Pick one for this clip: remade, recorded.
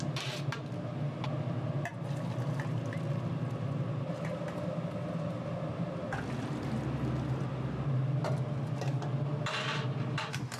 recorded